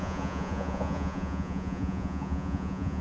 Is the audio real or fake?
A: fake